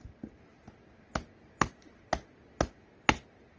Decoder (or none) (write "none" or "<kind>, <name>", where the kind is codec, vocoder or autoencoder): none